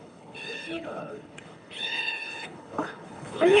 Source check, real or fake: fake